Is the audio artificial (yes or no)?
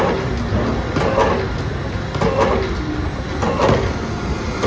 no